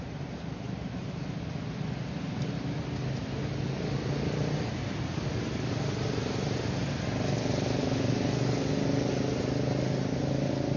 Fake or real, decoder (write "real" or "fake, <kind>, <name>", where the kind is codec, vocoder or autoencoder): real